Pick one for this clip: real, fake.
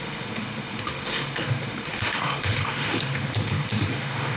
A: fake